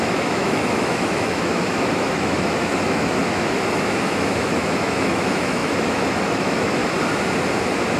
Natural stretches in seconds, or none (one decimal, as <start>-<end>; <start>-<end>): 6.8-8.0